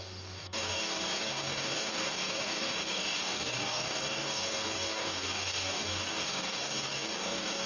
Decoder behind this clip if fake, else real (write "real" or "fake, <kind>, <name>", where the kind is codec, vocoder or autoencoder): fake, codec, DAC